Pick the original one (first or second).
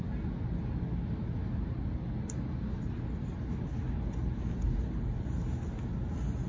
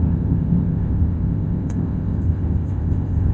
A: first